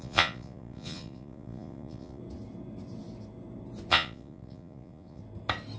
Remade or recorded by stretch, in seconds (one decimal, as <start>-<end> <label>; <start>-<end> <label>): 0.0-2.2 remade; 2.2-3.9 recorded; 3.9-5.2 remade; 5.2-5.8 recorded